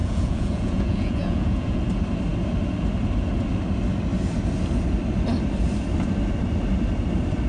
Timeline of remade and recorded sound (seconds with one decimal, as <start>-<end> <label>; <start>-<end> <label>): 0.0-1.8 remade; 1.8-7.5 recorded